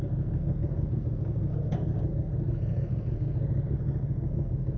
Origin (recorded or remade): remade